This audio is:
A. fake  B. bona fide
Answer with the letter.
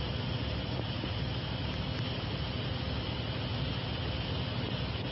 B